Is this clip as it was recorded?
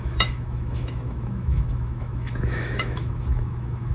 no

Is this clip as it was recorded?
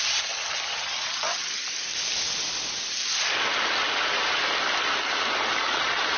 yes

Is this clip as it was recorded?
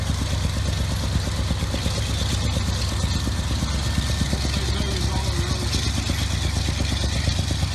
yes